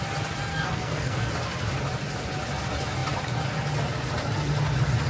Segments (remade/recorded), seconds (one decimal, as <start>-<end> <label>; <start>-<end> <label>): 0.0-0.5 recorded; 0.5-1.3 remade; 1.3-5.1 recorded